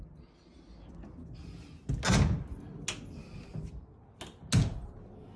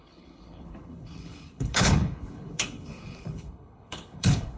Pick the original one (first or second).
first